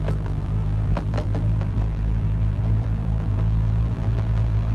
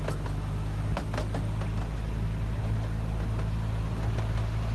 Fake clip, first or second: first